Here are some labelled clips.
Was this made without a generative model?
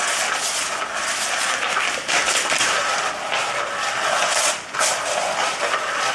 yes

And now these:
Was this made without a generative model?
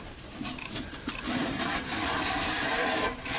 no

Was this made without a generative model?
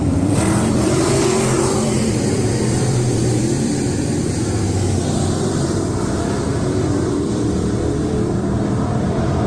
no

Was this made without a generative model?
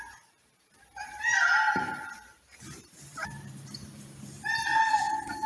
no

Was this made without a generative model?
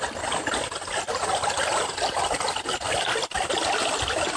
yes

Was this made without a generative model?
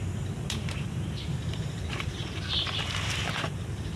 no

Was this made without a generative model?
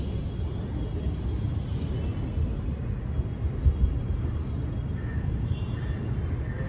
yes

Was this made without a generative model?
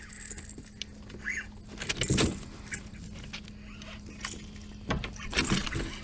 yes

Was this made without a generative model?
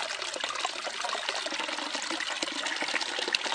yes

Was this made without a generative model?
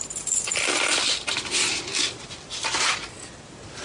no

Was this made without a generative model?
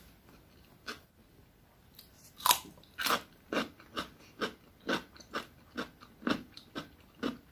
yes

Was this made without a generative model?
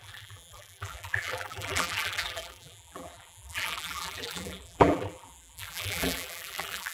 no